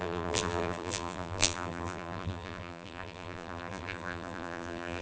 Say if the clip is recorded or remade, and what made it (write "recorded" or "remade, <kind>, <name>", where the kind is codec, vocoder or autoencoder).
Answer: remade, vocoder, BigVGAN v2